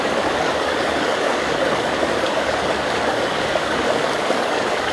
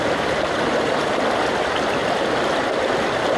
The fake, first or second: first